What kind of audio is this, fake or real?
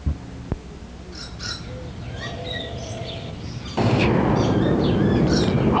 real